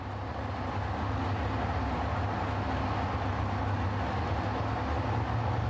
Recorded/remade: recorded